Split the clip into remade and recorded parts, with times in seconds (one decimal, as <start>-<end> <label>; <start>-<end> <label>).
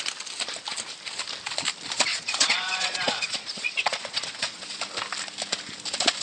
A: 0.0-2.1 recorded; 2.1-4.8 remade; 4.8-6.2 recorded